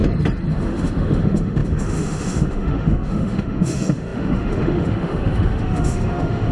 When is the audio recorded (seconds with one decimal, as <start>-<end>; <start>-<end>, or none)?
0.0-0.5